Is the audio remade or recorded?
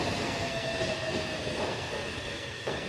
remade